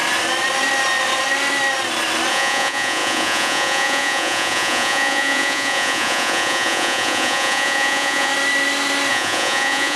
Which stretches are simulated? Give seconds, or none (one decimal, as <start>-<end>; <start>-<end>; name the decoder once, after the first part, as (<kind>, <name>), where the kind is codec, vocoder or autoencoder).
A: 2.3-8.3 (vocoder, Vocos); 9.1-10.0